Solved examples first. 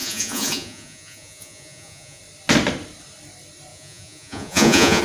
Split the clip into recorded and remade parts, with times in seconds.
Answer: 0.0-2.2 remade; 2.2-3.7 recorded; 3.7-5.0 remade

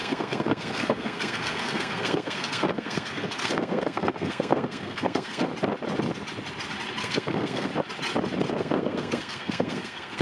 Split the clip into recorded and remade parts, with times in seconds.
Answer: 0.0-5.5 remade; 5.5-7.0 recorded; 7.0-7.7 remade; 7.7-8.5 recorded; 8.5-10.2 remade